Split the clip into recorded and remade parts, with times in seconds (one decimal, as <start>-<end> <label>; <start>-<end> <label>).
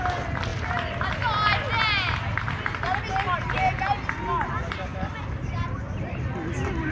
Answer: 0.0-6.9 recorded